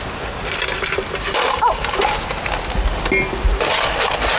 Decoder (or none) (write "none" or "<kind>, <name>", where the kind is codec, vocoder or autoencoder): none